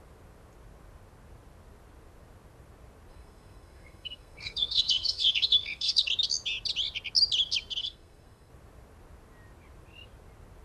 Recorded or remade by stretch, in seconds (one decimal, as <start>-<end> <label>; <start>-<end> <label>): 0.0-3.1 recorded; 3.1-6.1 remade; 6.1-7.8 recorded; 7.8-8.5 remade; 8.5-10.6 recorded